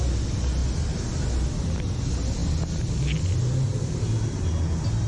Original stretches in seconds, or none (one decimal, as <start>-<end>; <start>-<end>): 0.0-5.1